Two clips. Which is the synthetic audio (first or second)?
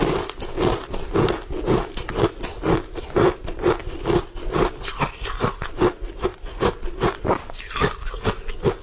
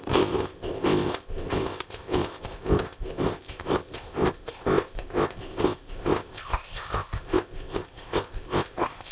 second